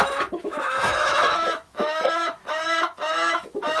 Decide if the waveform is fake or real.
fake